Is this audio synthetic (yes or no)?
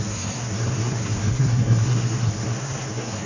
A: yes